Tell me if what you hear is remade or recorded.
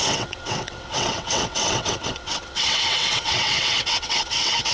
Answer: remade